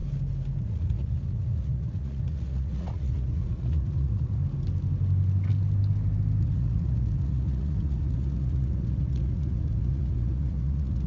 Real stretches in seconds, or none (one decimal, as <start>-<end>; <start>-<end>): 0.0-0.6; 4.4-6.4